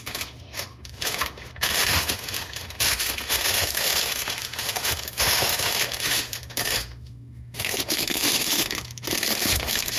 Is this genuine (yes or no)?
no